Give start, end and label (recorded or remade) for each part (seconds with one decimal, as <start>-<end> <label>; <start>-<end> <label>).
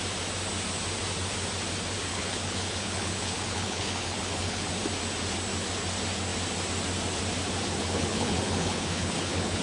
0.0-2.1 recorded; 2.1-4.7 remade; 4.7-7.8 recorded; 7.8-9.6 remade